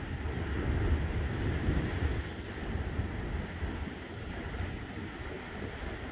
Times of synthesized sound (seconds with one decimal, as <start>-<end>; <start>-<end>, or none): 2.6-3.4